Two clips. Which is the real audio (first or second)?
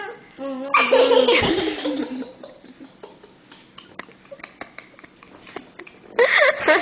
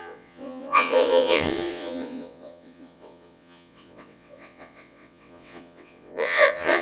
first